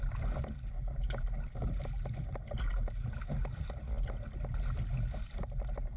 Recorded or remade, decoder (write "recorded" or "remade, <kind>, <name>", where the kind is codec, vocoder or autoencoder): recorded